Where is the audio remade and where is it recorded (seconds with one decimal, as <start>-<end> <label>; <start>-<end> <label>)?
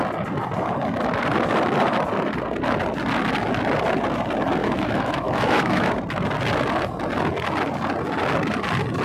0.0-4.6 recorded; 4.6-5.9 remade; 5.9-9.0 recorded